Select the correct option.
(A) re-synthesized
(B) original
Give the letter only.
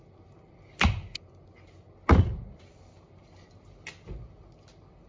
B